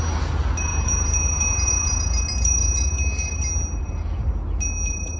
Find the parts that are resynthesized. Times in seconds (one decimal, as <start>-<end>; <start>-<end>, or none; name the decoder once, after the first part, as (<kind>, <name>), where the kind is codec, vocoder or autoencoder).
0.7-1.7 (vocoder, BigVGAN v2)